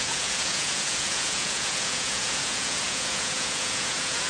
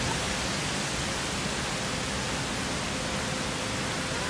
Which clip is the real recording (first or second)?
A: second